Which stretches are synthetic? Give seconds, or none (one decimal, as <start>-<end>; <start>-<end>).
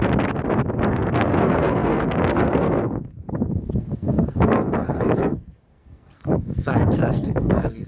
0.9-7.9